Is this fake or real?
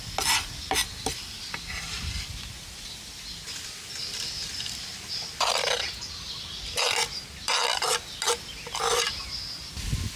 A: real